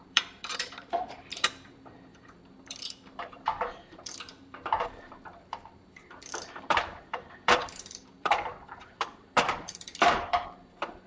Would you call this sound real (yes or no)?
no